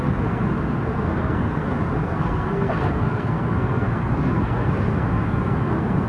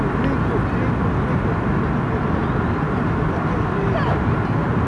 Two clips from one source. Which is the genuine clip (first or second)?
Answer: second